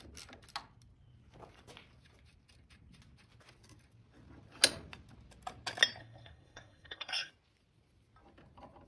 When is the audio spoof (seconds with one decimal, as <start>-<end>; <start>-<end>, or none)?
6.0-7.3

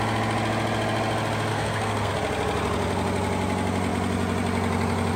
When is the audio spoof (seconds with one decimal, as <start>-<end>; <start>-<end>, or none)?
1.5-2.1

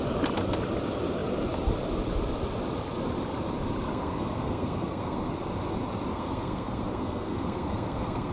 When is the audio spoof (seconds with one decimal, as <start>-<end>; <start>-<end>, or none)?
3.9-5.3; 6.1-8.3

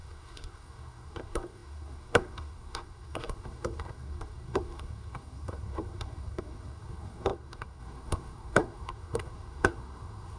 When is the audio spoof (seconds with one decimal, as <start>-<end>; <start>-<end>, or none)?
0.0-10.4